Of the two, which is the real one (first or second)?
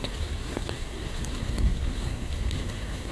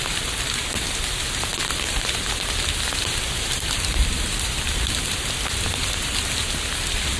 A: second